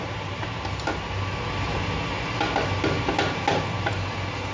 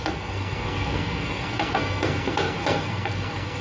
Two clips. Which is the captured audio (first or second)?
first